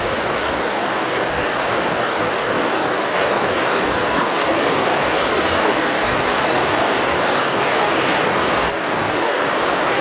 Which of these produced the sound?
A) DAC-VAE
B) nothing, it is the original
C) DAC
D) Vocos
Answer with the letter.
C